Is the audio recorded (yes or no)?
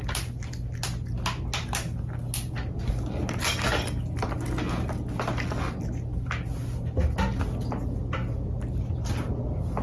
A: yes